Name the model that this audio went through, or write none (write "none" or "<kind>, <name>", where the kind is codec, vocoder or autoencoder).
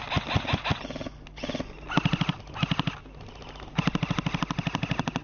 none